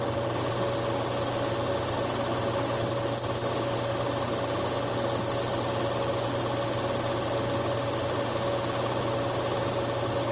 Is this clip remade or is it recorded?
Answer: recorded